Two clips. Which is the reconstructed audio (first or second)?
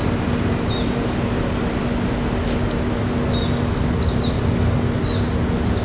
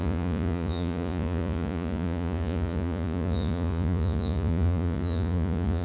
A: second